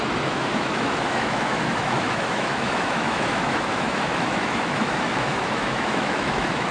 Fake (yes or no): yes